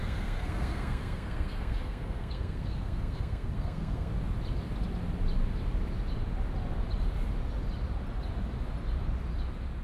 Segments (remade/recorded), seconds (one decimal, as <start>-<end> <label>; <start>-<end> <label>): 0.0-4.1 remade; 4.1-9.8 recorded